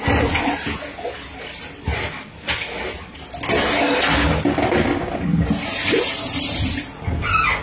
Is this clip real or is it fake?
real